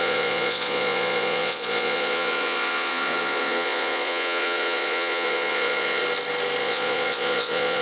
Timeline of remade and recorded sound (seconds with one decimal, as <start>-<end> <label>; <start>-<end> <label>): 0.0-6.0 remade; 6.0-6.6 recorded; 6.6-7.8 remade